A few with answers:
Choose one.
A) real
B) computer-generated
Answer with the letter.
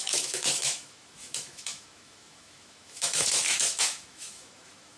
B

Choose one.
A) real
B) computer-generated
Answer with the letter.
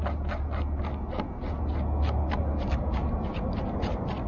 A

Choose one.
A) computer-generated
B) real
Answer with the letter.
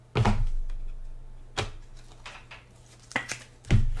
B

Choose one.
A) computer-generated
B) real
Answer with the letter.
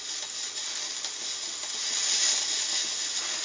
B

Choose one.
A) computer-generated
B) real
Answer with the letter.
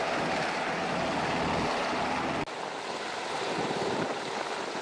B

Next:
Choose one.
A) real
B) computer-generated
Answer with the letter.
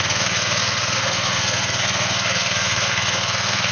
B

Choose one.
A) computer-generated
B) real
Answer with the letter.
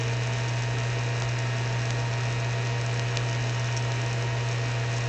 B